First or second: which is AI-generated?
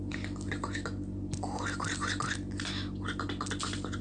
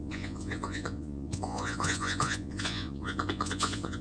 second